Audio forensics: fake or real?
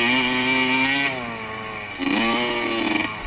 real